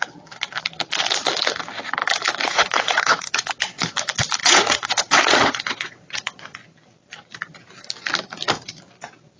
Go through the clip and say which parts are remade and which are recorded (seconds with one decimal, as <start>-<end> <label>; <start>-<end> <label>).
0.0-2.4 recorded; 2.4-3.8 remade; 3.8-4.4 recorded; 4.4-6.6 remade; 6.6-9.4 recorded